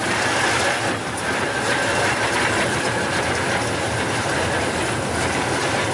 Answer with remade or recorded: recorded